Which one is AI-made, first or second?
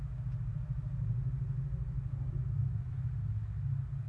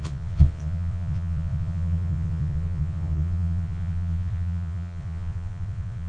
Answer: second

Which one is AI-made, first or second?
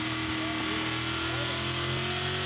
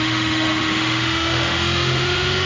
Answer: second